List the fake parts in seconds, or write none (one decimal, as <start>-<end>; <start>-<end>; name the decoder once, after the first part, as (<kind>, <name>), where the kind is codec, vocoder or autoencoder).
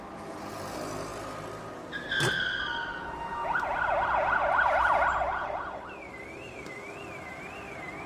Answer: none